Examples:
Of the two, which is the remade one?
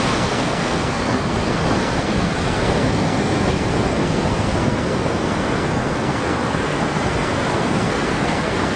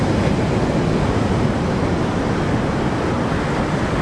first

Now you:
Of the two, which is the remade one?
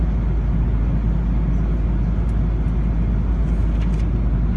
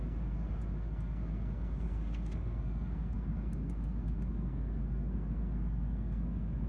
second